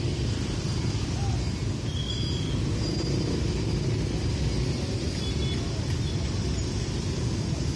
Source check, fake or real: real